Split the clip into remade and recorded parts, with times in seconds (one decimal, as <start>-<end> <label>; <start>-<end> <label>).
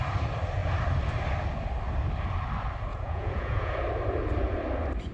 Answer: 0.0-2.9 recorded; 2.9-3.7 remade; 3.7-5.1 recorded